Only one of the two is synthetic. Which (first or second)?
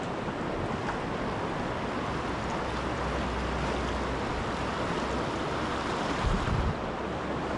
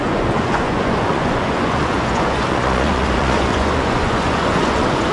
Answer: second